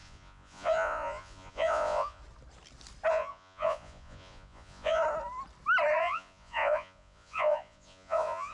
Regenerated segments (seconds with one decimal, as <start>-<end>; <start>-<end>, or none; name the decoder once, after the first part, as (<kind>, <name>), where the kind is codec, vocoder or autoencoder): 0.0-2.2 (vocoder, Vocos); 3.1-5.0; 6.0-8.5